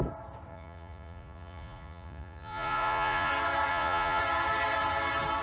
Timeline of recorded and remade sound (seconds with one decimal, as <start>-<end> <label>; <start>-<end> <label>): 0.0-0.5 recorded; 0.5-3.3 remade; 3.3-3.7 recorded; 3.7-4.2 remade; 4.2-5.4 recorded